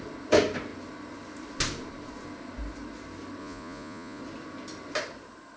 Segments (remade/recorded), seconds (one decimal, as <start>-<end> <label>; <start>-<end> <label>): 0.0-3.4 recorded; 3.4-4.2 remade; 4.2-5.6 recorded